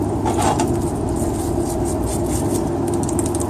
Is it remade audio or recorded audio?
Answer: recorded